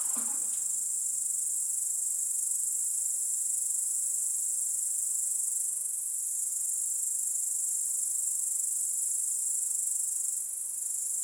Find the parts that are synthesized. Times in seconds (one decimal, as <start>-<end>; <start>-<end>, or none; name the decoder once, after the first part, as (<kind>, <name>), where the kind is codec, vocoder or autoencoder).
2.9-6.5 (vocoder, Vocos)